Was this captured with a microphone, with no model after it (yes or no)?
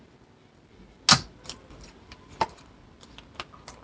yes